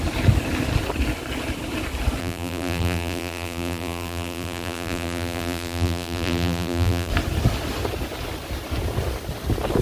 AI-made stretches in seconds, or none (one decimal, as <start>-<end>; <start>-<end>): 2.2-7.1